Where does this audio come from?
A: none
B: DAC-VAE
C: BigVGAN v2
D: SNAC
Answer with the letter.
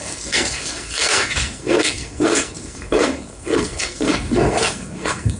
D